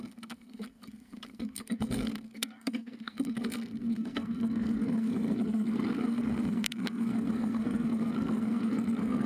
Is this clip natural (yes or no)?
no